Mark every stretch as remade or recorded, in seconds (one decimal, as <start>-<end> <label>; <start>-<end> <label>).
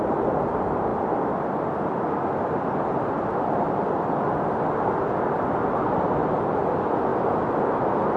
0.0-8.2 recorded